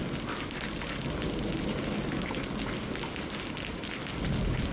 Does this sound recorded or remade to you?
recorded